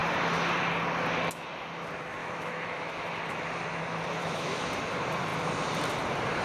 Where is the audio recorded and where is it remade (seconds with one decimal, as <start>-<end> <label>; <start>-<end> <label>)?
0.0-2.2 recorded; 2.2-3.2 remade; 3.2-4.2 recorded; 4.2-4.7 remade; 4.7-6.4 recorded